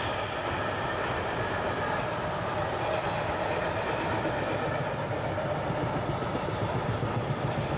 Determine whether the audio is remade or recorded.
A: recorded